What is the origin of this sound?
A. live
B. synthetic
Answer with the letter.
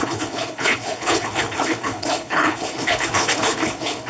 B